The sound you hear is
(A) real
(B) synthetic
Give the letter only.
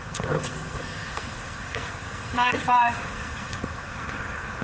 B